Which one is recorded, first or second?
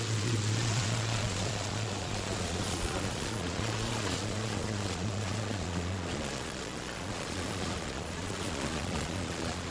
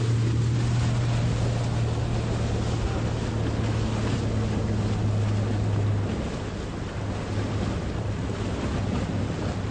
second